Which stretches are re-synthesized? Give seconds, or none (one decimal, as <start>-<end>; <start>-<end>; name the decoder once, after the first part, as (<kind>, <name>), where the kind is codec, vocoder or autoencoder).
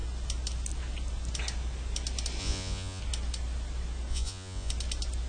2.4-3.0 (vocoder, Vocos); 4.1-4.7